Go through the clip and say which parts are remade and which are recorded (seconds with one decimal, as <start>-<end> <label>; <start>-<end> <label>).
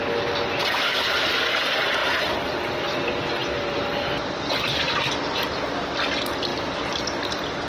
0.0-3.4 recorded; 3.4-6.0 remade; 6.0-6.5 recorded; 6.5-7.3 remade; 7.3-7.7 recorded